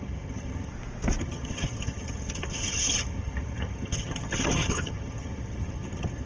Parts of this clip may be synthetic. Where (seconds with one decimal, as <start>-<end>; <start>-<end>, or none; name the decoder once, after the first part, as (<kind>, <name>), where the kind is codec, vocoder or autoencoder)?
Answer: 0.0-0.7 (vocoder, HiFi-GAN); 1.2-6.3